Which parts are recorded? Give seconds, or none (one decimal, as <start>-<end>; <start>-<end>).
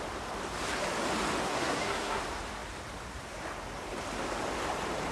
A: 0.0-1.4; 2.2-5.1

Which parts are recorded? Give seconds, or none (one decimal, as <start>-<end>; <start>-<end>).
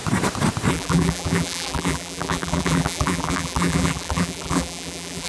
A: 0.0-0.7